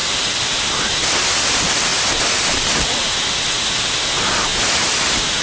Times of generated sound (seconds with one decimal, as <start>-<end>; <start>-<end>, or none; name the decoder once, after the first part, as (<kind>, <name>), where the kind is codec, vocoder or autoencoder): 0.0-0.9 (vocoder, BigVGAN v2)